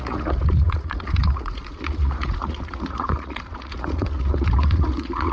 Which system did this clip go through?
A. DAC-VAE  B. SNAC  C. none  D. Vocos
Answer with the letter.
D